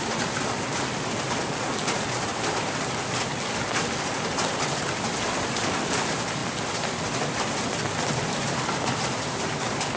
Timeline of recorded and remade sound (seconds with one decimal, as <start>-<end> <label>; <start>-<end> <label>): 0.0-10.0 recorded